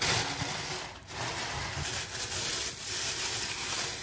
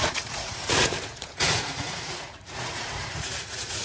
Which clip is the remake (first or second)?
second